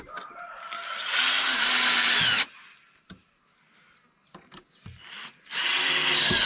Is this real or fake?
real